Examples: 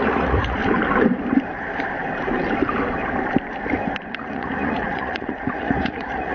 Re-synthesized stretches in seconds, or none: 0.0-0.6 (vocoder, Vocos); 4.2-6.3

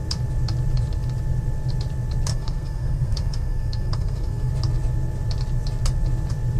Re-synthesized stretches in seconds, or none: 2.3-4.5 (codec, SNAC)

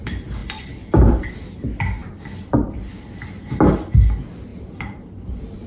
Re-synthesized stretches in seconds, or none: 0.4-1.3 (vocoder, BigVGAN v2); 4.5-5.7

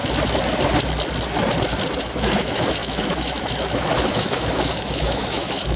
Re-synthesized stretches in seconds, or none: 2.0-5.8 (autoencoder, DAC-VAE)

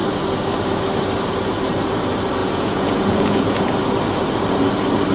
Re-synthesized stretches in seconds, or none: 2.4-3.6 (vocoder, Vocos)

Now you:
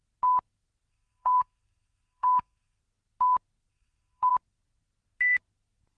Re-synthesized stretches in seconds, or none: 0.9-2.8 (codec, SNAC); 3.7-4.3